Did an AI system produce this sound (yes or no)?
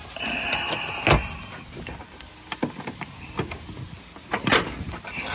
no